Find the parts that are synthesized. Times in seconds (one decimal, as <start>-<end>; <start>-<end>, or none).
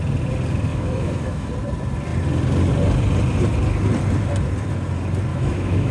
0.7-1.5; 5.3-5.9